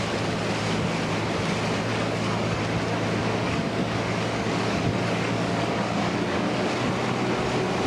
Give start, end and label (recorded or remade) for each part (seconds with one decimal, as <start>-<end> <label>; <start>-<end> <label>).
0.0-1.9 recorded; 1.9-2.6 remade; 2.6-3.2 recorded; 3.2-6.7 remade; 6.7-7.9 recorded